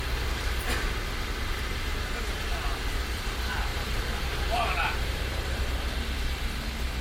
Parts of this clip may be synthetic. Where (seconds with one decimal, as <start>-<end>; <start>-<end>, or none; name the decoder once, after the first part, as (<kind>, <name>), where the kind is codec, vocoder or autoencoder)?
1.9-2.4 (vocoder, BigVGAN v2); 3.7-5.6